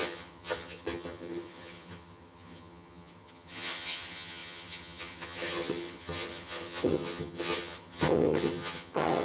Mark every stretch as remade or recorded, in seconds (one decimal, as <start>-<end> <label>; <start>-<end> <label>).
0.0-9.2 remade